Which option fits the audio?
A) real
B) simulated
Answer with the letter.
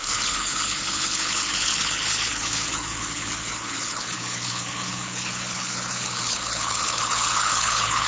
B